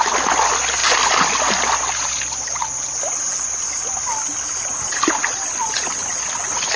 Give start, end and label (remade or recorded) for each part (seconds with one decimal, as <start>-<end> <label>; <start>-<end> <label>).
0.0-6.8 recorded